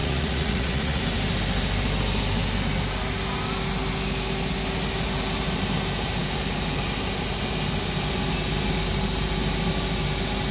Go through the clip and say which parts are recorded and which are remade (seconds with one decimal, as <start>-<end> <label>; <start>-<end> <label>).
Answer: 0.0-1.0 remade; 1.0-10.5 recorded